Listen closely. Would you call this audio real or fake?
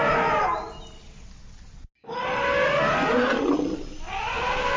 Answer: real